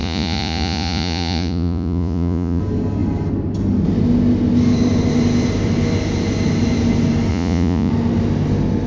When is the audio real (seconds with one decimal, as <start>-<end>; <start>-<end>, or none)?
2.6-7.3; 7.9-8.9